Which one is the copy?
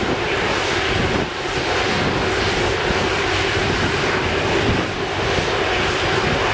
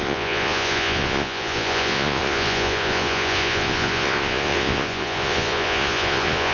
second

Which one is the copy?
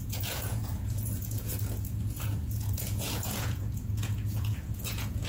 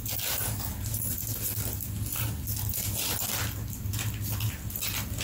first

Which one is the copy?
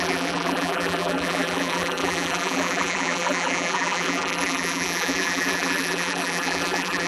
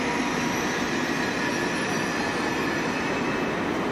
first